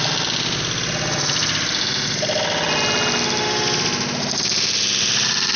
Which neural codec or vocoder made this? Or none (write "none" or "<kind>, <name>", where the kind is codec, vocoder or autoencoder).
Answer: none